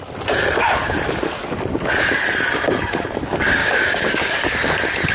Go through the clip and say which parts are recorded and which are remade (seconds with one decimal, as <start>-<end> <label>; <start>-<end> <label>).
0.0-3.6 recorded; 3.6-4.3 remade; 4.3-5.1 recorded